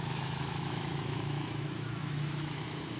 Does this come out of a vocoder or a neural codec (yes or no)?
yes